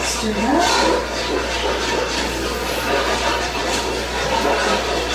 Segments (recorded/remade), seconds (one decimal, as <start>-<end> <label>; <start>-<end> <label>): 0.0-5.1 recorded